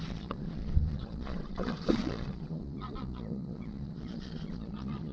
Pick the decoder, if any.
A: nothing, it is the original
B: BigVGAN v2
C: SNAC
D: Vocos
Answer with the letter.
D